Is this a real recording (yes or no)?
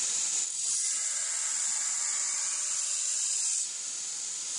yes